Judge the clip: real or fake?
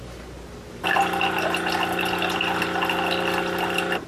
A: real